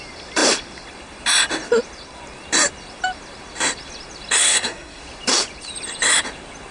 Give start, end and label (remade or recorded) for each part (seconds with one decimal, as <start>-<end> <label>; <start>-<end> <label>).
0.0-4.4 recorded; 4.4-5.0 remade; 5.0-6.7 recorded